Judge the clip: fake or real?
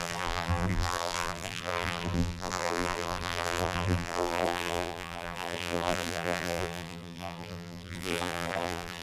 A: fake